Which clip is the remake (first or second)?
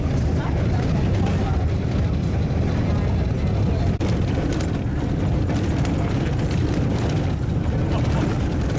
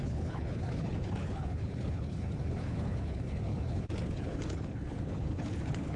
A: second